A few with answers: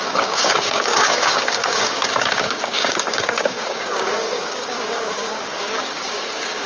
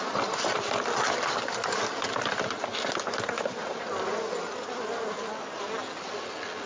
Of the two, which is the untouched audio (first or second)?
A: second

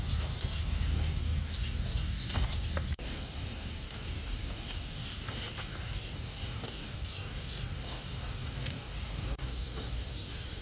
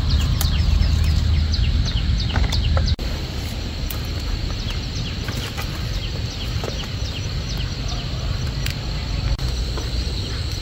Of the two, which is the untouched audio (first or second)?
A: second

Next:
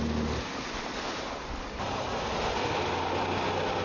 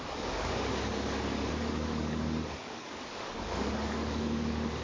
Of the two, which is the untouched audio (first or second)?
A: first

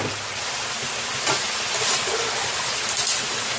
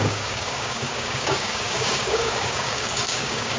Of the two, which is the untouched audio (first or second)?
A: first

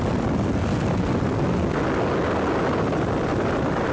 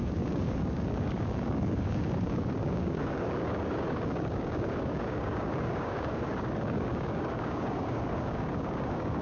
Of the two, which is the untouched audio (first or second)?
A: first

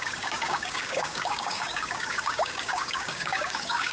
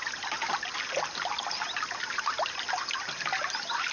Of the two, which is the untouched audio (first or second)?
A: second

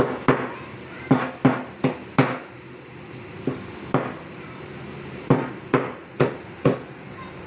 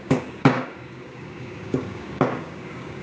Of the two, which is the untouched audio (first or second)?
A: first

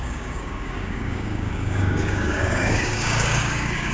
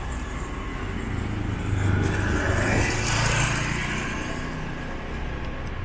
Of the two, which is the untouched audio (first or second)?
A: second